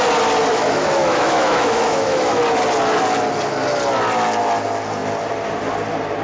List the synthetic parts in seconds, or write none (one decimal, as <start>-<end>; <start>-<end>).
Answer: 0.5-2.4

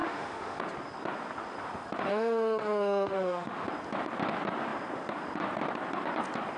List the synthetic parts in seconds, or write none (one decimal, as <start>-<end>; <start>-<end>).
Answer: 0.0-0.6; 2.1-3.7

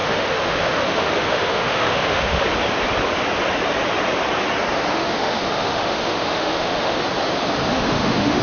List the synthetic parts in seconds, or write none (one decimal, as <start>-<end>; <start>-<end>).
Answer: 0.0-2.4; 4.9-7.0; 7.7-8.4

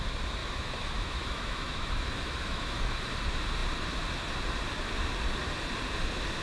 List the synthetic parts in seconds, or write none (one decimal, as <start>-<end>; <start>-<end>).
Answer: 0.4-3.0